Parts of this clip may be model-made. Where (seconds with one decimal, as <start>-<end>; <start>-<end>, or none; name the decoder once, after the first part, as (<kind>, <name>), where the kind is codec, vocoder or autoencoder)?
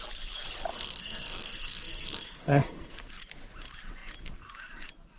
0.7-3.1 (codec, SNAC)